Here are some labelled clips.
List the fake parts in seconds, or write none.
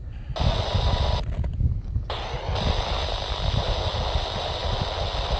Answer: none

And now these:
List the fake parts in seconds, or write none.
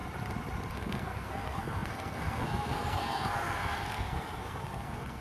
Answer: 0.7-5.2 (codec, SNAC)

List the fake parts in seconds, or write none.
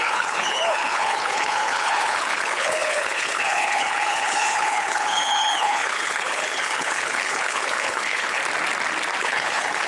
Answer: 0.0-8.4 (codec, HILCodec); 9.2-9.9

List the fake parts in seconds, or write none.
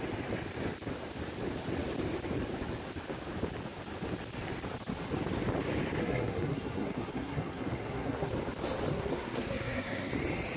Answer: 6.0-8.3 (codec, SNAC); 8.9-10.1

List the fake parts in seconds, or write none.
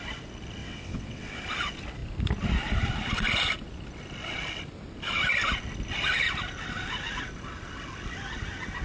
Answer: 0.6-1.4 (vocoder, WaveNeXt)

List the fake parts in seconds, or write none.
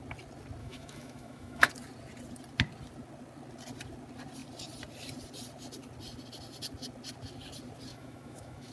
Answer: 0.6-1.7 (autoencoder, DAC-VAE); 7.9-8.7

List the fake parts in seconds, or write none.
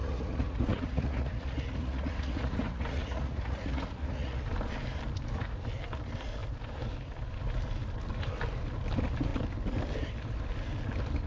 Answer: 0.0-4.4 (vocoder, Vocos)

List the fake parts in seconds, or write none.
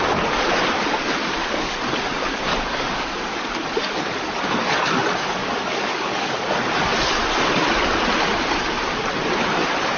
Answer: 1.2-1.8 (codec, DAC); 2.2-4.0; 5.4-6.5